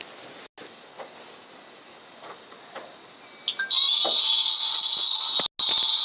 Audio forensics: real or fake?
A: real